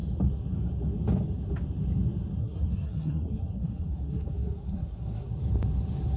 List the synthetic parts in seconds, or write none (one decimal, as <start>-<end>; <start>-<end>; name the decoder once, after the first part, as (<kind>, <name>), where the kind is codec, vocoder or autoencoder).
2.4-5.3 (codec, SNAC)

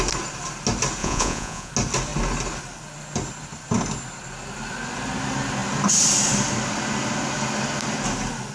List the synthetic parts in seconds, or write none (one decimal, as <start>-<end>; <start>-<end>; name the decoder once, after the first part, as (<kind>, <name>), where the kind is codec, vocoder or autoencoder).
1.0-1.7 (vocoder, Vocos)

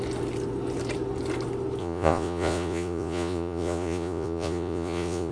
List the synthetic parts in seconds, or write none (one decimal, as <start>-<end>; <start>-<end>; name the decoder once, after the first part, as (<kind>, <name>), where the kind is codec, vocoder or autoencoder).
1.8-5.3 (vocoder, Vocos)

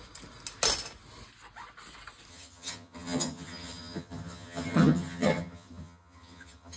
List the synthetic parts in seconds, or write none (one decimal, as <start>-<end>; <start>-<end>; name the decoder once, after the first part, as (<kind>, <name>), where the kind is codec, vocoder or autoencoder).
2.3-6.8 (vocoder, HiFi-GAN)

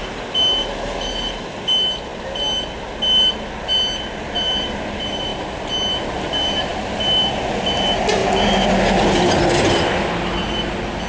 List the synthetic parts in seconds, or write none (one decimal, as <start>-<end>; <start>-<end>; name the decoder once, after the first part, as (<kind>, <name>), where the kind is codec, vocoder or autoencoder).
none

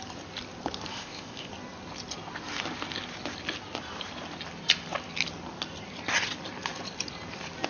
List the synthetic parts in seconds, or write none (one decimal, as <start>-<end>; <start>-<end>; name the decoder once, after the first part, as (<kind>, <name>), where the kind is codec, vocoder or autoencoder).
0.9-1.5 (codec, ZipCodec)

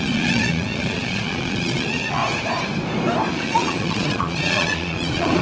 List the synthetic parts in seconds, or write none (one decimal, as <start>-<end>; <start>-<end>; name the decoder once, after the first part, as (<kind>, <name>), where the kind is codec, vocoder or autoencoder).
0.0-2.2 (vocoder, Vocos); 3.3-5.4

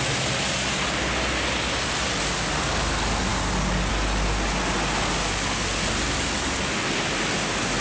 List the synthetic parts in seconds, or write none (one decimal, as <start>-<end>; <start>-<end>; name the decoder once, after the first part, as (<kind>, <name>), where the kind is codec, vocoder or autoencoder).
none